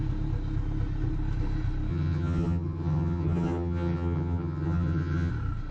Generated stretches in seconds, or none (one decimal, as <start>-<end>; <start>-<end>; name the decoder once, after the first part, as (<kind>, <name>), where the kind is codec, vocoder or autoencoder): 1.9-5.3 (vocoder, HiFi-GAN)